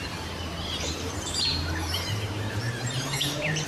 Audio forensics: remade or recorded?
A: remade